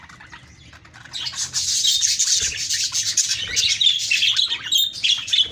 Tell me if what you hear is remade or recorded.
recorded